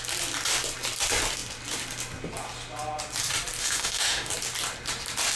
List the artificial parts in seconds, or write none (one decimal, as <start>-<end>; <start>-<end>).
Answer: 3.6-4.3